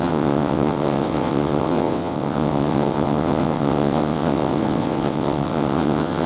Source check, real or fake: fake